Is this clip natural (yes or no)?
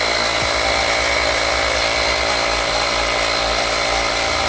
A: yes